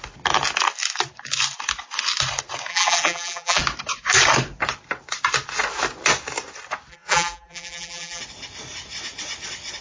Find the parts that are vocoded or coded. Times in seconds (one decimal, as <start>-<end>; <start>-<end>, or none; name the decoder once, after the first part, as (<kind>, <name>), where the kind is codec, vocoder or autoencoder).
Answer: 2.7-3.6 (vocoder, BigVGAN v2); 6.9-8.2

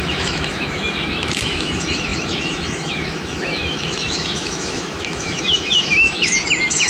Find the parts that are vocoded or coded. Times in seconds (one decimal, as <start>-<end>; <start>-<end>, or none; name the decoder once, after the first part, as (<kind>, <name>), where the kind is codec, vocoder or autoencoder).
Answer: 0.0-6.9 (autoencoder, DAC-VAE)

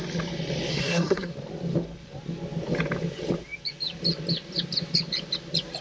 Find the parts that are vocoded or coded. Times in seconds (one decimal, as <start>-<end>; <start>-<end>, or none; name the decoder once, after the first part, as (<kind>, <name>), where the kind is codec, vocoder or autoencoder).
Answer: 0.7-1.3 (codec, SNAC)

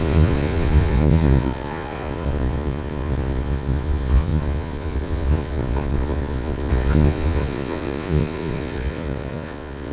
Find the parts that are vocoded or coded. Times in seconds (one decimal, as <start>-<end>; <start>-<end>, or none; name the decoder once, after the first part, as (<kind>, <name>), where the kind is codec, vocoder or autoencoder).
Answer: 0.0-9.9 (vocoder, Vocos)

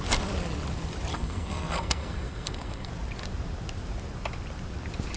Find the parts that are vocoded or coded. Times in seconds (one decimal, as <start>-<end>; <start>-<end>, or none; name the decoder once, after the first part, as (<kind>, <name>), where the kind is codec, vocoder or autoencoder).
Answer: 1.1-2.9 (codec, SNAC)

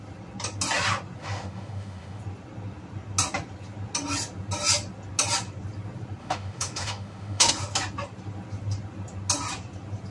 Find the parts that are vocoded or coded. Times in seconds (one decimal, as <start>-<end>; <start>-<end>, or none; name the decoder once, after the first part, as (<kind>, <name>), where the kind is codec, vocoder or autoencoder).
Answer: 1.2-2.2 (autoencoder, DAC-VAE); 6.2-7.5

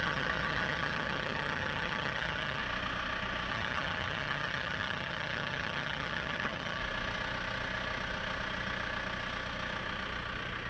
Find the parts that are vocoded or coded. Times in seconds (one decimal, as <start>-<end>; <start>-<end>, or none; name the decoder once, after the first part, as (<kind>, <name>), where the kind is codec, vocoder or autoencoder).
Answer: 0.0-2.6 (vocoder, HiFi-GAN); 3.5-6.8

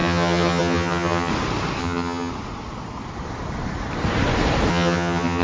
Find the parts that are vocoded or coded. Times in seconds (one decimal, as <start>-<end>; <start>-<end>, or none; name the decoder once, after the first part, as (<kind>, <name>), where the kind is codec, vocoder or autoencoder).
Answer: 0.0-1.3 (vocoder, HiFi-GAN); 1.8-2.3; 4.7-5.4